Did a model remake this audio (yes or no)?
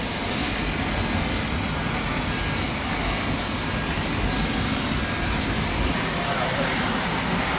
no